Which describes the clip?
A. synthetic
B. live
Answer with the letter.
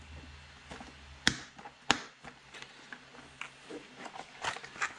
B